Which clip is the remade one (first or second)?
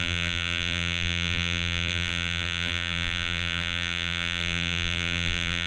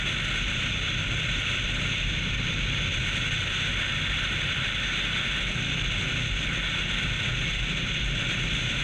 first